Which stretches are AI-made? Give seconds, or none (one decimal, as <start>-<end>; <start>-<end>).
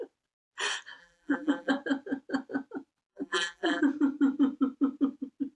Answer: 1.0-1.7; 3.1-3.8